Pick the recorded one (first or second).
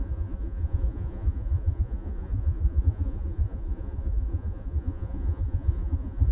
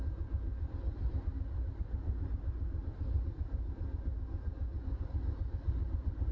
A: second